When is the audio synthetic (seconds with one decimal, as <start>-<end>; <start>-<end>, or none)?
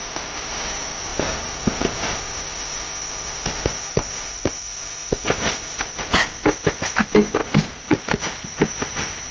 none